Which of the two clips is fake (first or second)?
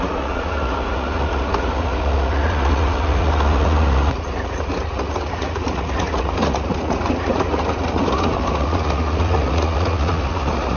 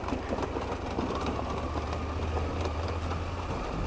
first